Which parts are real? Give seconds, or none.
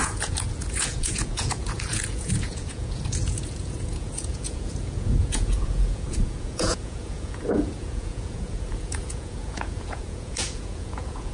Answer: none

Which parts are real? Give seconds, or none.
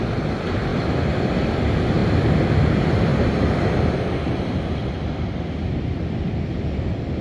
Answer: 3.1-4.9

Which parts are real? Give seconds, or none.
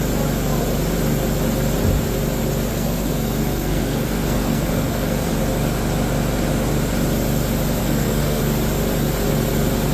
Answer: 0.0-2.7; 5.4-7.8; 8.4-9.9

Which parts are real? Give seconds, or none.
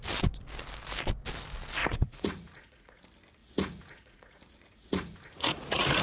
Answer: 0.0-1.8; 3.0-3.4